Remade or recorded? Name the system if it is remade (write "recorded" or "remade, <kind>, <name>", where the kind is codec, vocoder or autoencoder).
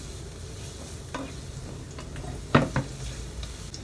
recorded